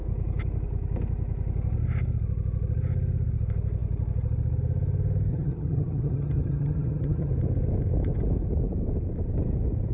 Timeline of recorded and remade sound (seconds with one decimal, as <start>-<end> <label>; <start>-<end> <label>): 0.0-5.3 recorded; 5.3-7.3 remade; 7.3-9.9 recorded